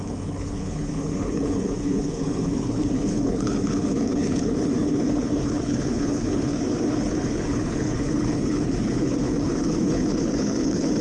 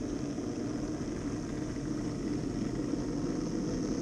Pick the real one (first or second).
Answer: second